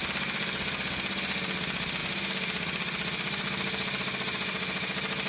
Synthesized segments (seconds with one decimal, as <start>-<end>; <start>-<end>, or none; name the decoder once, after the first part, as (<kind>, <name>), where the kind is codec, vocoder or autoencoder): none